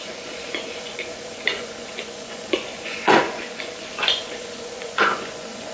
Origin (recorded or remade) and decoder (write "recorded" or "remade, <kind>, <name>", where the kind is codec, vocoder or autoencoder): remade, vocoder, Vocos